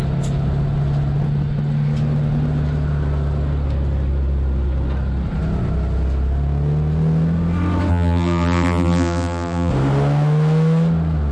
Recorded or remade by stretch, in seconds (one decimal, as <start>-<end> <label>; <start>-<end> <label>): 0.0-7.9 recorded; 7.9-9.7 remade; 9.7-11.3 recorded